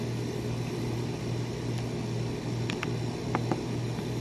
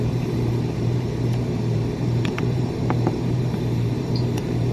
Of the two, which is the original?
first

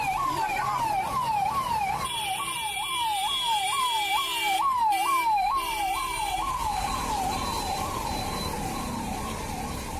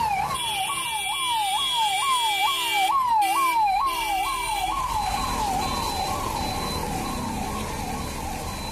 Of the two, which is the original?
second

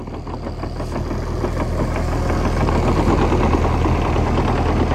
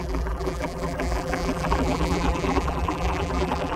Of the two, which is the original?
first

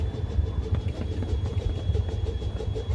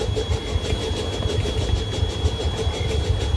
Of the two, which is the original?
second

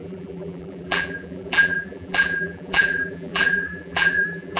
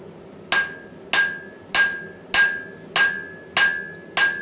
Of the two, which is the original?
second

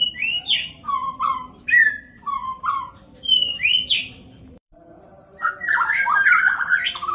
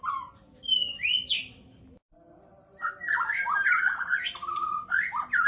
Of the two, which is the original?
second